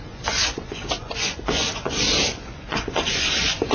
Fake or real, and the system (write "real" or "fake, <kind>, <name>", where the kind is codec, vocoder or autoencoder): fake, vocoder, Vocos